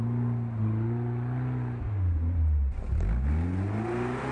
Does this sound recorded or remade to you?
recorded